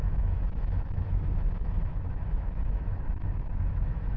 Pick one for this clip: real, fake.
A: fake